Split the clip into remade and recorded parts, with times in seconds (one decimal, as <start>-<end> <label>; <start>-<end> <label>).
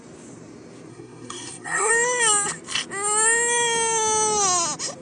0.0-0.9 recorded; 0.9-1.9 remade; 1.9-5.0 recorded